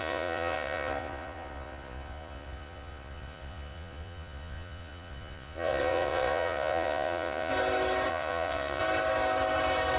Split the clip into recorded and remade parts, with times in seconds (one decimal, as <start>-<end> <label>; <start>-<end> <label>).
0.0-7.5 remade; 7.5-8.1 recorded; 8.1-8.8 remade; 8.8-10.0 recorded